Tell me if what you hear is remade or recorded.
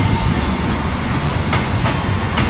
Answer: remade